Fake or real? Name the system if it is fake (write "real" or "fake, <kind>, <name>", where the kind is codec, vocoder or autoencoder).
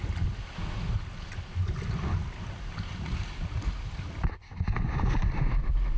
real